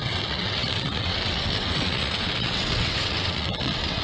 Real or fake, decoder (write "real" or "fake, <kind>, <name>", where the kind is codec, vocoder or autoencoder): fake, vocoder, WaveNeXt